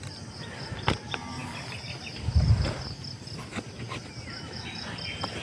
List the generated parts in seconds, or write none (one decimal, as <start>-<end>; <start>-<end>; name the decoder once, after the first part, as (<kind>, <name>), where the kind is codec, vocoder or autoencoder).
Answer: none